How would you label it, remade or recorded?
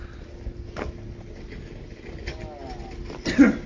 recorded